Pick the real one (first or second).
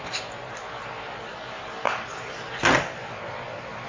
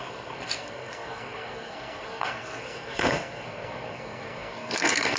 first